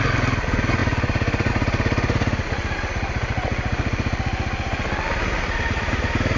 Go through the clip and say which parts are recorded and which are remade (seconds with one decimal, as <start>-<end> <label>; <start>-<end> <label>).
0.0-0.8 recorded; 0.8-1.5 remade; 1.5-6.4 recorded